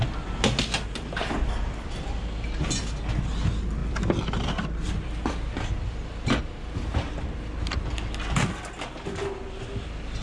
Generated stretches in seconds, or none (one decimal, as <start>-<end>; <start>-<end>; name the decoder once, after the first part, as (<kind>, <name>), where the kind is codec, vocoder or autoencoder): 3.8-6.4 (vocoder, BigVGAN v2); 6.9-7.9